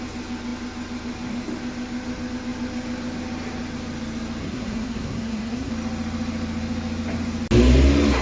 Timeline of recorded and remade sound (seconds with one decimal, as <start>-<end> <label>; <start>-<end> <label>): 0.0-4.4 recorded; 4.4-5.7 remade; 5.7-8.2 recorded